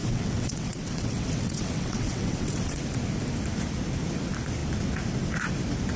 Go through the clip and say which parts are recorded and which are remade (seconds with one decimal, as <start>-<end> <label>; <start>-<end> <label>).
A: 0.0-2.8 remade; 2.8-6.0 recorded